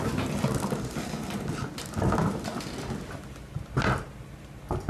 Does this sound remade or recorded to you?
recorded